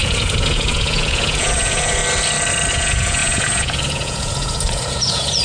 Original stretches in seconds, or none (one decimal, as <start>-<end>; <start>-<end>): 2.0-2.7